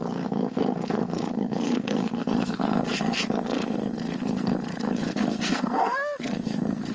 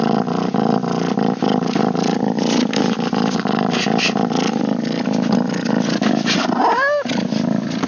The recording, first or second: second